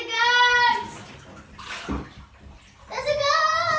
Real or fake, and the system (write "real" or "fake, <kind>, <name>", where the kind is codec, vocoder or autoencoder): real